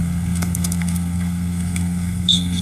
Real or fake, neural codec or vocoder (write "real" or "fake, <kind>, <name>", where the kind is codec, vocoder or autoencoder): fake, codec, SNAC